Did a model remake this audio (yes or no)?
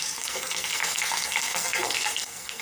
yes